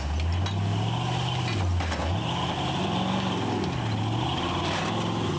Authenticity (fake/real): real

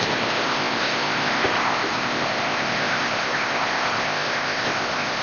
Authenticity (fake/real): fake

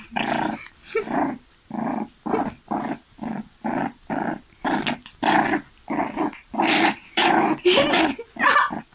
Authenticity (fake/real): real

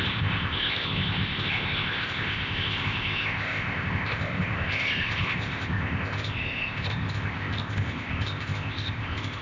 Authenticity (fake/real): fake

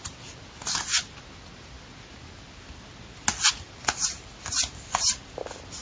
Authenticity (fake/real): real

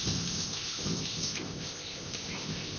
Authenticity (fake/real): fake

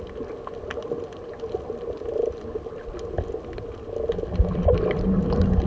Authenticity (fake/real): real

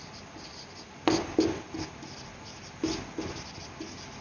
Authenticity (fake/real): real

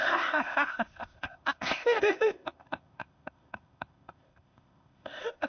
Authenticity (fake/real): fake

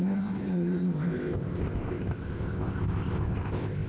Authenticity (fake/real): fake